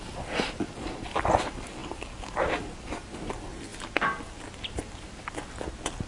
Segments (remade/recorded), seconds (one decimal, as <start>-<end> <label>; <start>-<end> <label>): 0.0-6.1 recorded